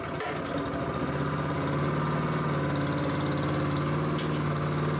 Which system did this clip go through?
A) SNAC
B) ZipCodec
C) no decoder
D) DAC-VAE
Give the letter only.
C